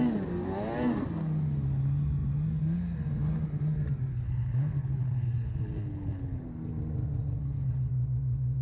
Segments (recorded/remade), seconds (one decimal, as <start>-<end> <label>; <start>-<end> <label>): 0.0-4.1 recorded; 4.1-6.4 remade; 6.4-7.4 recorded; 7.4-7.9 remade; 7.9-8.6 recorded